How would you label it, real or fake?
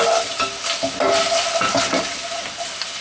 real